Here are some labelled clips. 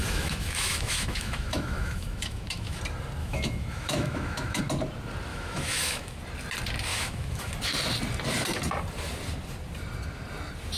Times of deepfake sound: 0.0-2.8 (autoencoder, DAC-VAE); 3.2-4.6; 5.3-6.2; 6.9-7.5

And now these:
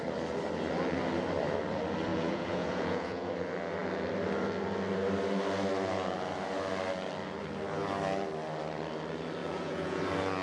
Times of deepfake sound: 2.1-3.3 (vocoder, Vocos); 9.4-10.0

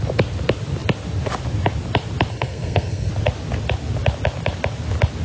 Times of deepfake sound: 2.3-3.1 (codec, SNAC)

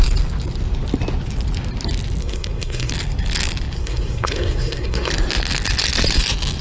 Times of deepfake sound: 2.2-2.9 (codec, SNAC); 3.8-5.1

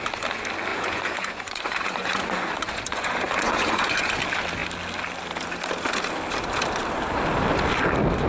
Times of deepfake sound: 0.7-4.1 (vocoder, Vocos)